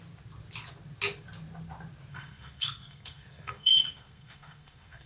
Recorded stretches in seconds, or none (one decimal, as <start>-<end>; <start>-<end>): 0.0-2.1